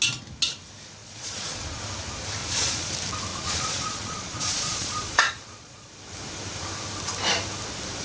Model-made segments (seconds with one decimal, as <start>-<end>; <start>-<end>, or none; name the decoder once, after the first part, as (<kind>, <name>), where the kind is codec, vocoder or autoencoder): 1.0-1.8 (vocoder, Vocos); 2.4-2.9; 3.3-5.9